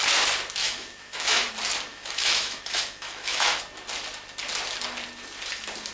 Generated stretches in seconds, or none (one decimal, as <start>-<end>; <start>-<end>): 0.6-1.5; 1.9-3.6